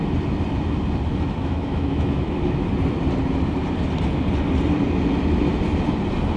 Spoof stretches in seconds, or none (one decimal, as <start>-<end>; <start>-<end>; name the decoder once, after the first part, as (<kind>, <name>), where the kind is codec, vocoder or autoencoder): 1.1-2.7 (autoencoder, DAC-VAE)